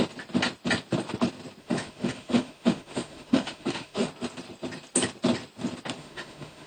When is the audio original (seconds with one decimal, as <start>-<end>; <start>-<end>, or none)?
0.0-1.6; 4.1-6.0